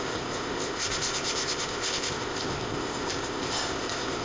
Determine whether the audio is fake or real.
fake